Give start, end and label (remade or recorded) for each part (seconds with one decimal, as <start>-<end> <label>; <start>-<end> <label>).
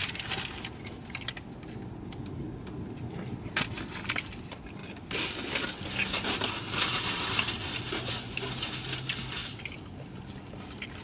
0.0-11.0 recorded